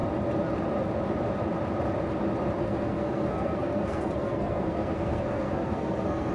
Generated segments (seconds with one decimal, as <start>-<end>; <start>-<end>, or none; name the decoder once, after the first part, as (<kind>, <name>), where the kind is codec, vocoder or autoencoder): 2.6-6.3 (codec, SNAC)